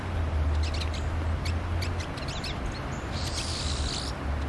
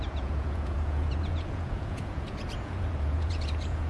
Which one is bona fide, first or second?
first